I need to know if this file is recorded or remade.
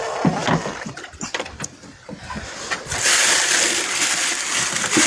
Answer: remade